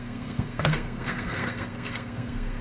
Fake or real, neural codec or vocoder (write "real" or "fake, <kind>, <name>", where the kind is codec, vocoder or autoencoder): fake, codec, SNAC